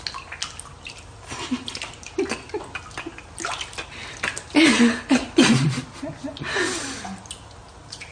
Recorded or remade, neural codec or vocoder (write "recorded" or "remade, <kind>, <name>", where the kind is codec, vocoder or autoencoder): recorded